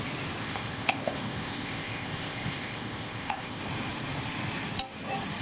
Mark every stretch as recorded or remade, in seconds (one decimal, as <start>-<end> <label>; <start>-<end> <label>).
0.0-0.4 recorded; 0.4-3.6 remade; 3.6-5.4 recorded